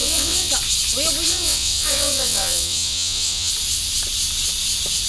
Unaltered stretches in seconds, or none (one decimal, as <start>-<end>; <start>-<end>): 0.5-1.3; 3.5-5.1